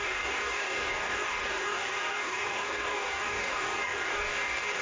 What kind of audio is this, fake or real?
fake